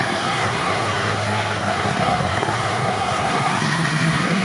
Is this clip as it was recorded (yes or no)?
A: no